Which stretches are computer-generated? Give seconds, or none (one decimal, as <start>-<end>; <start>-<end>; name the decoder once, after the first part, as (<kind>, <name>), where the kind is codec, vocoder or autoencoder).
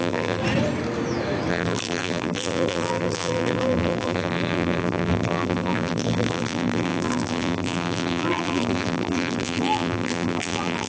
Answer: 0.0-0.4 (vocoder, BigVGAN v2); 1.5-10.9